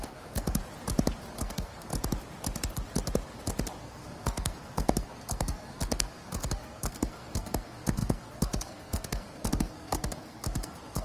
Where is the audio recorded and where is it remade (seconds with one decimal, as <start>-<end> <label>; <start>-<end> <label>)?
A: 0.0-0.6 remade; 0.6-1.3 recorded; 1.3-1.9 remade; 1.9-3.8 recorded; 3.8-11.0 remade